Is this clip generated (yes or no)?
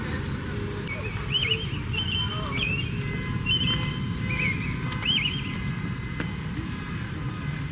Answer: no